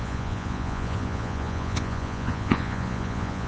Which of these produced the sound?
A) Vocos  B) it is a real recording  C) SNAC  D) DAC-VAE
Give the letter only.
A